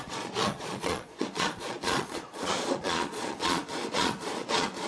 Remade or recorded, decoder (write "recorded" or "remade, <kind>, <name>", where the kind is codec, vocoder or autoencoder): remade, vocoder, Vocos